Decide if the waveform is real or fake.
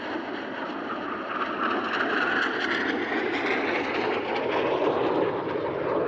real